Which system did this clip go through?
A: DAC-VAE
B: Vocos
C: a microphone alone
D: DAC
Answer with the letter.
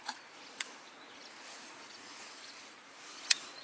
B